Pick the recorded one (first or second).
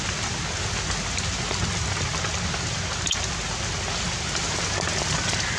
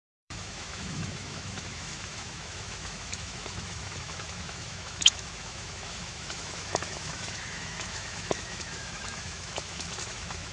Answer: first